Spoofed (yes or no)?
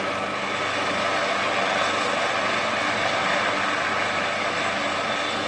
no